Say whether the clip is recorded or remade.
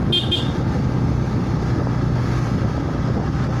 recorded